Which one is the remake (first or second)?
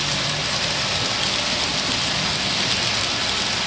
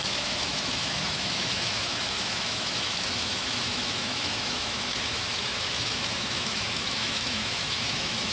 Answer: second